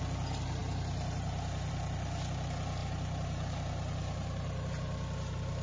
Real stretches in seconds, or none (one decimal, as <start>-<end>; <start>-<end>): 0.0-0.6; 1.7-2.8; 4.7-5.6